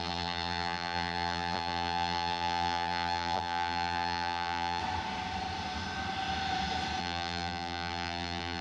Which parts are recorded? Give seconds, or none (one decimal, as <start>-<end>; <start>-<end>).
4.8-7.0